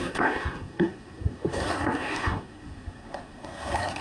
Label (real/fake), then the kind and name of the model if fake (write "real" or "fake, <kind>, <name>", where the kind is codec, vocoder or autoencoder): fake, codec, SNAC